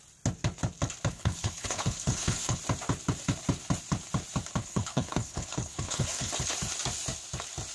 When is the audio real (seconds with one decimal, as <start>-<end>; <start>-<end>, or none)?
0.0-1.1; 2.6-4.6; 6.3-7.7